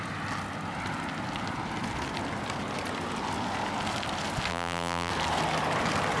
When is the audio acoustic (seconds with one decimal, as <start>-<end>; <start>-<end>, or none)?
0.0-4.5; 5.1-6.2